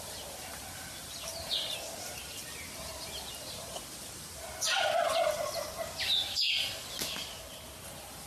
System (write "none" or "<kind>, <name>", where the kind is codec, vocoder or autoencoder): none